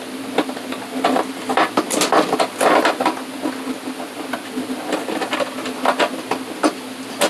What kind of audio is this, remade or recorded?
recorded